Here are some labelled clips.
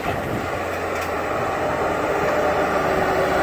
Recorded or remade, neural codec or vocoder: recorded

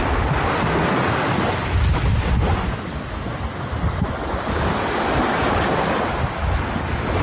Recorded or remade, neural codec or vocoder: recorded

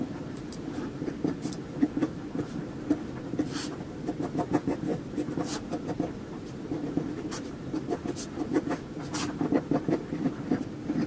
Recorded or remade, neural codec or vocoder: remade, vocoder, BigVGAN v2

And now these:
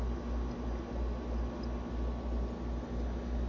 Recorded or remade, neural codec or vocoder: recorded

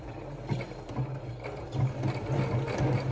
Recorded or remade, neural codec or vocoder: recorded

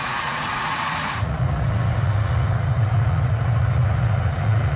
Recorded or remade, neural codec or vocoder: remade, vocoder, Vocos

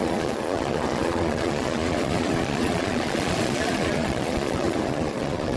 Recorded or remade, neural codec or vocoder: remade, vocoder, Vocos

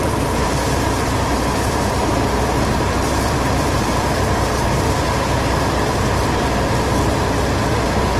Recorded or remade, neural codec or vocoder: remade, vocoder, BigVGAN v2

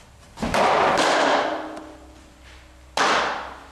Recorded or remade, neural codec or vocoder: recorded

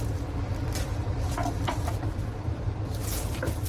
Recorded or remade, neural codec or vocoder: remade, vocoder, BigVGAN v2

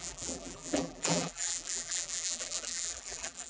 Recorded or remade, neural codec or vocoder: remade, vocoder, BigVGAN v2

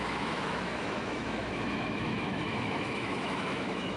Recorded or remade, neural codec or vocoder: remade, autoencoder, DAC-VAE